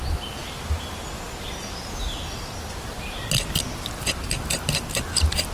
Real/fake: real